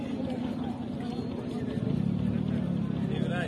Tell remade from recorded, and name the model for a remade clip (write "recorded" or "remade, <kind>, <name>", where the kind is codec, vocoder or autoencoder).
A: recorded